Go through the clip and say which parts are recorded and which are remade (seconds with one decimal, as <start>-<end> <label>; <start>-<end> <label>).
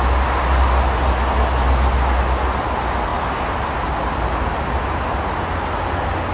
0.0-6.3 recorded